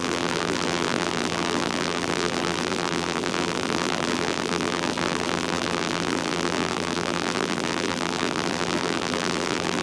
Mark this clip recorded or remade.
remade